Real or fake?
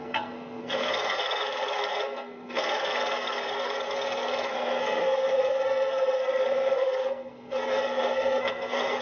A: fake